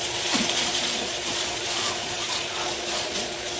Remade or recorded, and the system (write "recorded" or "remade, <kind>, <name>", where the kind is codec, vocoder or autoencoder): remade, vocoder, Vocos